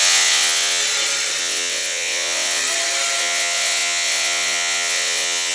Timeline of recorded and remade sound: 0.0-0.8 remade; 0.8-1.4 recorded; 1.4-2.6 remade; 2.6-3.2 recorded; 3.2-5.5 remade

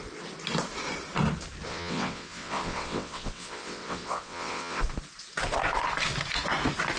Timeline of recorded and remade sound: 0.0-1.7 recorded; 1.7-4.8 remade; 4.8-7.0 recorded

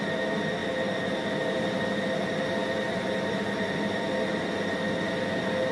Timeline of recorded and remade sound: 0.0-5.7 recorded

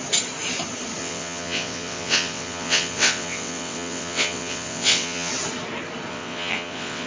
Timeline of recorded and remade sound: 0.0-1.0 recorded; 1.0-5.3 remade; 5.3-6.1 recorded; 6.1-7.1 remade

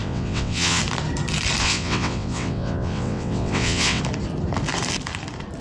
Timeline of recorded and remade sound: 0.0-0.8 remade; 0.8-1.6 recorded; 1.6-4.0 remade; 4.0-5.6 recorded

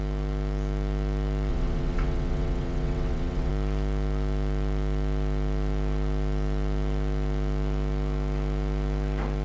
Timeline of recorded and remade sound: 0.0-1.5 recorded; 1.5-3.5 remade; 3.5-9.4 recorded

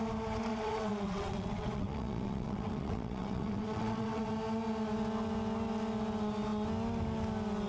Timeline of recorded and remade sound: 0.0-0.5 recorded; 0.5-4.3 remade; 4.3-7.7 recorded

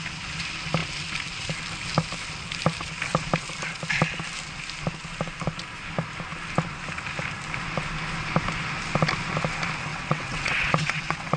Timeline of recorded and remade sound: 0.0-9.9 recorded; 9.9-11.4 remade